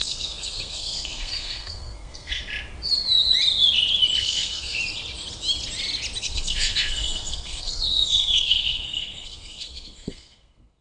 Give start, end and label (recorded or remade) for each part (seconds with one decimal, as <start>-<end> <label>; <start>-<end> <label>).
0.0-2.4 remade; 2.4-4.2 recorded; 4.2-4.8 remade; 4.8-6.2 recorded; 6.2-10.8 remade